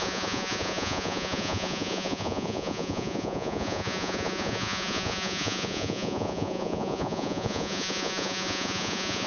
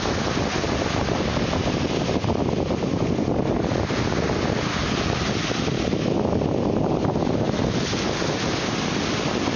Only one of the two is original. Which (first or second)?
second